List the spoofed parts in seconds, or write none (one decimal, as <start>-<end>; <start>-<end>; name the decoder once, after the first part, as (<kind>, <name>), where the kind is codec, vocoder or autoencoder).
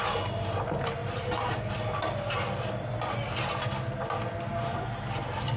none